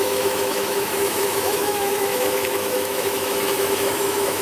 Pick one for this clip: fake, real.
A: fake